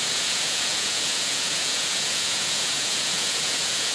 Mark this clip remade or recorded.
remade